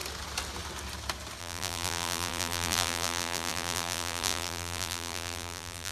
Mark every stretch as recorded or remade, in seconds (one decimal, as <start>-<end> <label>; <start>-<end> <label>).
0.0-1.4 recorded; 1.4-5.9 remade

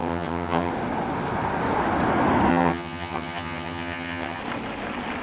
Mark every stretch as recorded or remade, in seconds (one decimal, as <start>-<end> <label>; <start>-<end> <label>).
0.0-0.7 remade; 0.7-2.5 recorded; 2.5-4.4 remade; 4.4-5.2 recorded

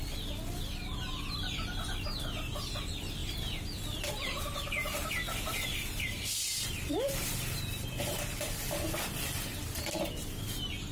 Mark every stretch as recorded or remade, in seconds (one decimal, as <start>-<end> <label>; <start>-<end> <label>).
0.0-10.9 recorded

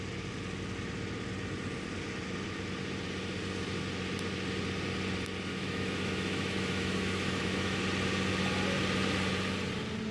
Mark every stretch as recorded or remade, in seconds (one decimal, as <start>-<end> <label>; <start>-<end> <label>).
0.0-5.5 recorded; 5.5-7.8 remade; 7.8-10.1 recorded

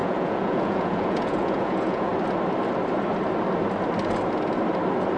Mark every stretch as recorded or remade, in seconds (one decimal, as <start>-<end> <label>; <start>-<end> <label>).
0.0-2.1 remade; 2.1-5.2 recorded

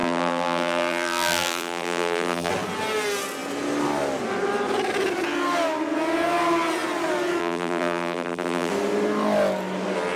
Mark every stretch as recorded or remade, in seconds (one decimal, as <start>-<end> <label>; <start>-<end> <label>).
0.0-2.5 remade; 2.5-7.4 recorded; 7.4-8.7 remade; 8.7-10.2 recorded

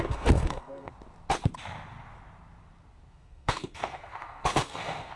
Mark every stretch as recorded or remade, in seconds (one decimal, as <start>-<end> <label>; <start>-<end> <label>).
0.0-0.9 remade; 0.9-3.1 recorded; 3.1-5.2 remade